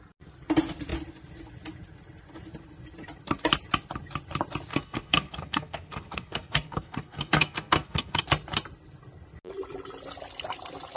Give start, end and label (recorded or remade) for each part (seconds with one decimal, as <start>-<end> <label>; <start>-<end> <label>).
0.0-4.7 recorded; 4.7-8.2 remade; 8.2-11.0 recorded